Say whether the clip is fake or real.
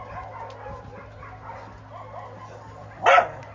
real